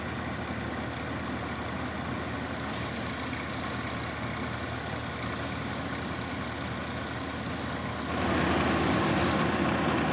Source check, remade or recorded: recorded